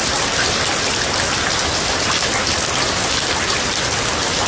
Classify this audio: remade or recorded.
recorded